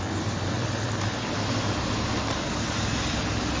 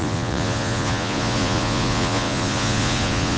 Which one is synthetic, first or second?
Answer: second